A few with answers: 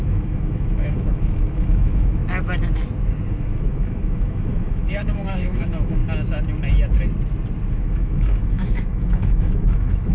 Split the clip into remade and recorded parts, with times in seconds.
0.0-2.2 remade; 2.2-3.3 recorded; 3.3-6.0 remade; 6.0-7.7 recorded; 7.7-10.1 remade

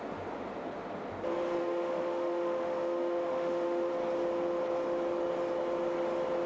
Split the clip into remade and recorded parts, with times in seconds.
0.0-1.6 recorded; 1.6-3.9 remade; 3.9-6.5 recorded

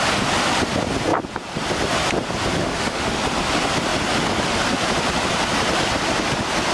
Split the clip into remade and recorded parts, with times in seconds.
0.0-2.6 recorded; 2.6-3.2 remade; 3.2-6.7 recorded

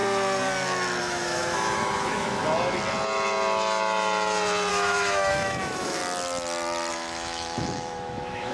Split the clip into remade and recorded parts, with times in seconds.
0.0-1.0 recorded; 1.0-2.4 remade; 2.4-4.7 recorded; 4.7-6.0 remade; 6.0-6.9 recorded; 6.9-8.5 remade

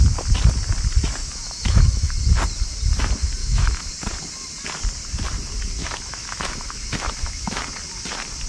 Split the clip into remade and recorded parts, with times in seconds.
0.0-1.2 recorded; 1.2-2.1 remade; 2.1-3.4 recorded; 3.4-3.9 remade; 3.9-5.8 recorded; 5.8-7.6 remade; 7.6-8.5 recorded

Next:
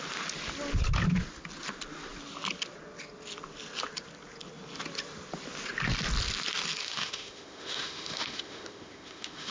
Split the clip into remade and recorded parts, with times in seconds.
0.0-6.8 recorded; 6.8-9.5 remade

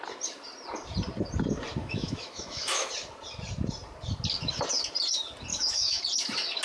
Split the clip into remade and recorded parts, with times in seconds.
0.0-1.8 recorded; 1.8-2.9 remade; 2.9-5.5 recorded; 5.5-6.0 remade; 6.0-6.6 recorded

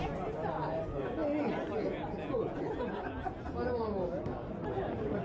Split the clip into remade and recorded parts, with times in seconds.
0.0-5.2 recorded